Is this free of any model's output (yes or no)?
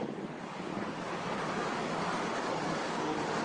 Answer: no